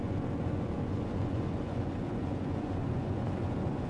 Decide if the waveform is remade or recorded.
remade